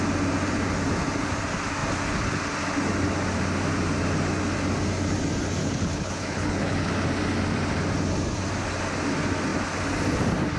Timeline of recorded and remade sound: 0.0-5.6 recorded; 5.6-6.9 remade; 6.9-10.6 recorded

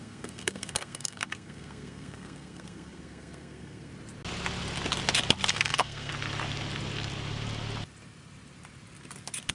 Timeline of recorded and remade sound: 0.0-3.9 remade; 3.9-5.5 recorded; 5.5-6.1 remade; 6.1-9.5 recorded

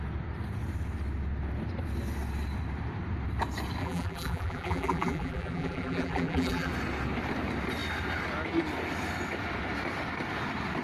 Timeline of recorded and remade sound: 0.0-3.8 recorded; 3.8-6.7 remade; 6.7-10.8 recorded